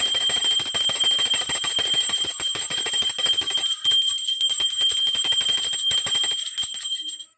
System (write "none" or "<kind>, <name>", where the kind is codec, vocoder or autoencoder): none